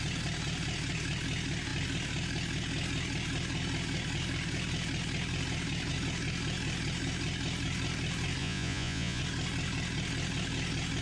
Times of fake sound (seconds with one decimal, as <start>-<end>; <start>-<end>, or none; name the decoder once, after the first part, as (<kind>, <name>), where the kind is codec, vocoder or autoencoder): 8.4-9.2 (vocoder, Vocos)

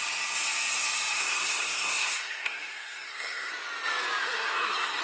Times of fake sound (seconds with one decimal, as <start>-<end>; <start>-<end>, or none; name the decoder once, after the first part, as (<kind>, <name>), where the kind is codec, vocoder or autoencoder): 1.2-3.5 (codec, SNAC); 4.2-5.0

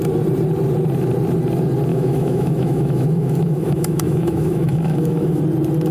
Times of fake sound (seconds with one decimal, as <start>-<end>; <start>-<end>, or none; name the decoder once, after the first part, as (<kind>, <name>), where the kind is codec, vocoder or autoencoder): 1.9-5.4 (autoencoder, DAC-VAE)

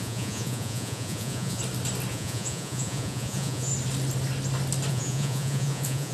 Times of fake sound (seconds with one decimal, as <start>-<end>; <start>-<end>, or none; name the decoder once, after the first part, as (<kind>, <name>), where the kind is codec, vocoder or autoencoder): 0.0-1.6 (vocoder, Vocos); 2.1-3.7; 4.9-6.1

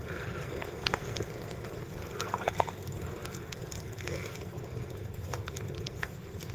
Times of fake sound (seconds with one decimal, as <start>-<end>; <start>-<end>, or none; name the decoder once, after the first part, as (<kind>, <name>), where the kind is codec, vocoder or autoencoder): 0.0-6.5 (codec, SNAC)

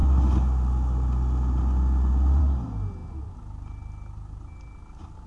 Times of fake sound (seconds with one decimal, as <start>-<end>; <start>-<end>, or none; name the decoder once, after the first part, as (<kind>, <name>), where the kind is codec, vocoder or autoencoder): none